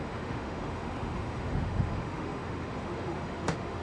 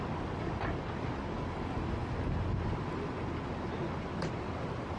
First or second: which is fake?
first